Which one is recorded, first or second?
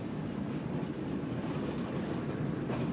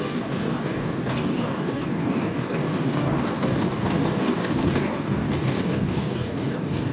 first